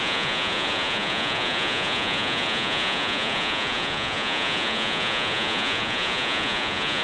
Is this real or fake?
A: fake